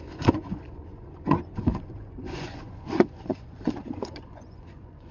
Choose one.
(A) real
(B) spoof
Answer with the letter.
B